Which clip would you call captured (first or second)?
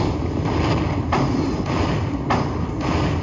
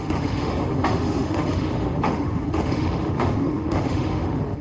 first